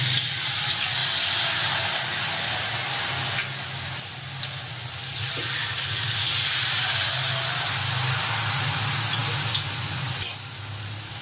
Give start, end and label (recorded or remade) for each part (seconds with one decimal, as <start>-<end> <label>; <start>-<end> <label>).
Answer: 0.0-11.2 recorded